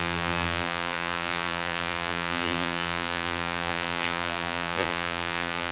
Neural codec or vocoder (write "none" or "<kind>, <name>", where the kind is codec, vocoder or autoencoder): vocoder, BigVGAN v2